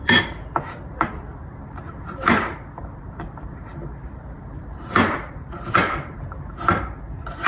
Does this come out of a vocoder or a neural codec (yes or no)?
yes